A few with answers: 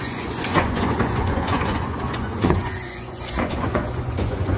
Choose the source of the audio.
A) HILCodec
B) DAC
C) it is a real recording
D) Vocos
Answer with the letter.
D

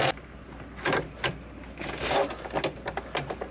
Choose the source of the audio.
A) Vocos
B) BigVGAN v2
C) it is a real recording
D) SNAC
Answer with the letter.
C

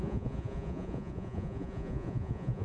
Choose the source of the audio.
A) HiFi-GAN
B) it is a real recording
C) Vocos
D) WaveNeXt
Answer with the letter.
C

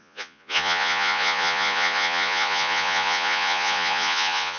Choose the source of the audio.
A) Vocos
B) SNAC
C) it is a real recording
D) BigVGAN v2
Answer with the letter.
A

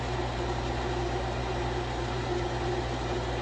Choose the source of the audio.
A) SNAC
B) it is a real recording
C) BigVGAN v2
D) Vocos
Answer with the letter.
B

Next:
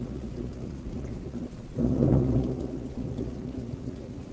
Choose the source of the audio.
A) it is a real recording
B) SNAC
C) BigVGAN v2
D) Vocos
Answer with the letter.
D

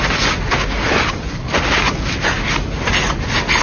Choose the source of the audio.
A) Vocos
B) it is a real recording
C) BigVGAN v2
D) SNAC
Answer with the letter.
B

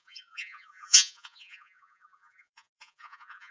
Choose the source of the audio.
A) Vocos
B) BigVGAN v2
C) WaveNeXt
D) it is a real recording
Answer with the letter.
A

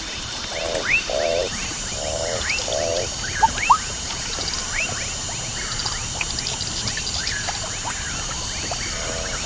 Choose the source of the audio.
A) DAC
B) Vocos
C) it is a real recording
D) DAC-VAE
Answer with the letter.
C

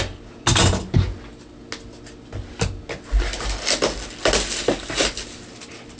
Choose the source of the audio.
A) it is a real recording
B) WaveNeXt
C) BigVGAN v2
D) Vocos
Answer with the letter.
A